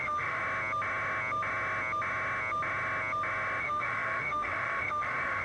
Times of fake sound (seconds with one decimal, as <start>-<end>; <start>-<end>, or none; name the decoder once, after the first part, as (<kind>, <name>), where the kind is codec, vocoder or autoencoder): 0.0-0.4 (autoencoder, DAC-VAE); 3.6-5.4